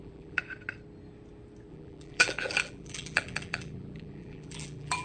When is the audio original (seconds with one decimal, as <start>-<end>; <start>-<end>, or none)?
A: 0.4-1.7